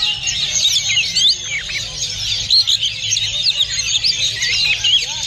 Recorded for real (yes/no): yes